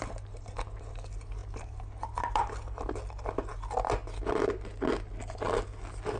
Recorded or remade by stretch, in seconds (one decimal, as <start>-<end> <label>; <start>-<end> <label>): 0.0-6.2 recorded